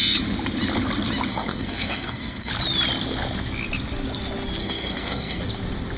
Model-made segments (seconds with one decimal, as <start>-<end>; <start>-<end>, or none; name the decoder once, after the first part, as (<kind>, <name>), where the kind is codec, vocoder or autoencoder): 1.3-2.5 (codec, SNAC); 4.6-5.4